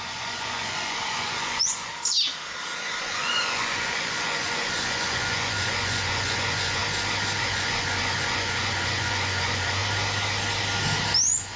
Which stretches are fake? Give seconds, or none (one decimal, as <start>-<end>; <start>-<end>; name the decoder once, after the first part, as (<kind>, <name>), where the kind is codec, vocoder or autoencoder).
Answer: 0.0-1.9 (vocoder, Vocos); 2.8-6.8; 7.4-9.8; 11.2-11.6